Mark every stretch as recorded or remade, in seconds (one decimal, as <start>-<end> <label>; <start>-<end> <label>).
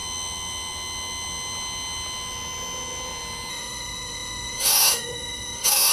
0.0-3.5 recorded; 3.5-5.9 remade